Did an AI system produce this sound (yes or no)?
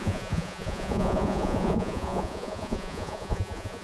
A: yes